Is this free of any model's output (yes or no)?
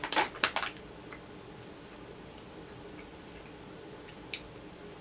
yes